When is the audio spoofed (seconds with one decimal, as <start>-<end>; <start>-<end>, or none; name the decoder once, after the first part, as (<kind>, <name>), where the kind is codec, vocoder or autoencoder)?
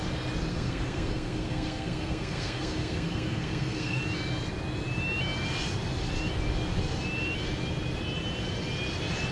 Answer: 0.5-4.0 (codec, SNAC)